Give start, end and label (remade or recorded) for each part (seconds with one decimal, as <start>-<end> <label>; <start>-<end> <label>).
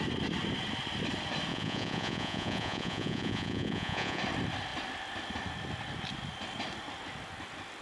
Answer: 0.0-1.5 recorded; 1.5-4.2 remade; 4.2-7.8 recorded